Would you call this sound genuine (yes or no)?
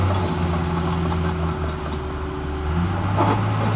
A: yes